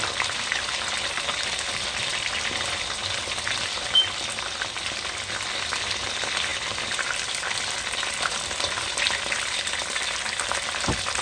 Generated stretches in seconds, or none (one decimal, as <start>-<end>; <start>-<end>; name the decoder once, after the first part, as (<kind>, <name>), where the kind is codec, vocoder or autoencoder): none